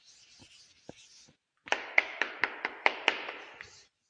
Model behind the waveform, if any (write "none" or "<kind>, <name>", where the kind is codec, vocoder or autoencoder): none